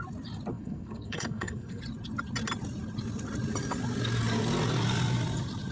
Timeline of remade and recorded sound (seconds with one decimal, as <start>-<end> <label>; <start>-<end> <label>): 0.0-0.5 recorded; 0.5-1.8 remade; 1.8-5.7 recorded